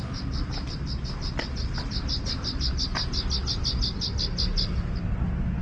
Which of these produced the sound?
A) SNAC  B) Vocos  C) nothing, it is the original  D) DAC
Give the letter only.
C